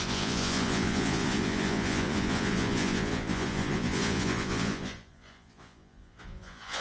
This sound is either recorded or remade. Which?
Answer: remade